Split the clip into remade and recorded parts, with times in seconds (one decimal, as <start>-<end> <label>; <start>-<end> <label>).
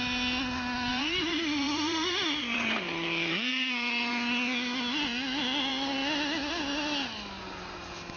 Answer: 0.0-0.9 recorded; 0.9-4.1 remade; 4.1-8.2 recorded